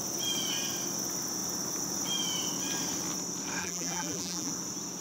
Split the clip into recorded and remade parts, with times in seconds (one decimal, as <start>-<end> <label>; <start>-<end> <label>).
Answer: 0.0-3.6 recorded; 3.6-4.5 remade; 4.5-5.0 recorded